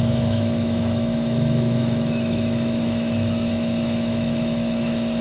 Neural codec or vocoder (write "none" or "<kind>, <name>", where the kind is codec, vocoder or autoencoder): autoencoder, DAC-VAE